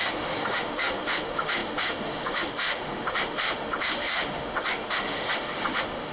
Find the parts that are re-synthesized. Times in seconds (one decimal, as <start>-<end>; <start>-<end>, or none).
0.0-6.1

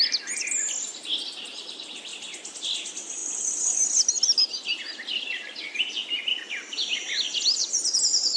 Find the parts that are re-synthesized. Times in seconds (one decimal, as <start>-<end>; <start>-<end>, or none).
none

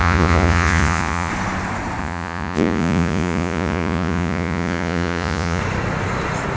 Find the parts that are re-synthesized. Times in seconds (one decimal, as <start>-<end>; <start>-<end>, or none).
0.0-1.3; 2.0-5.6

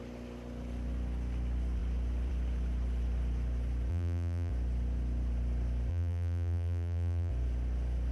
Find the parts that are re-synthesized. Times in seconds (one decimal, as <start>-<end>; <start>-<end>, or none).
3.9-4.5; 5.9-7.3

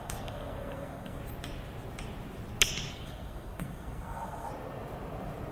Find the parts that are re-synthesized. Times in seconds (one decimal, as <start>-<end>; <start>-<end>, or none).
0.0-1.2; 2.9-4.5